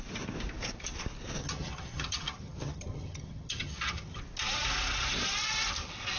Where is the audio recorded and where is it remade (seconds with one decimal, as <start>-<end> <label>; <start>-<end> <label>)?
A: 0.0-1.4 recorded; 1.4-4.2 remade; 4.2-6.2 recorded